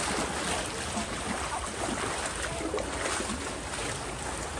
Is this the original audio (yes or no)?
yes